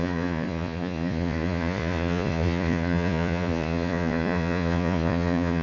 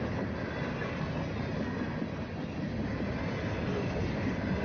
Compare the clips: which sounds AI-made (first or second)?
first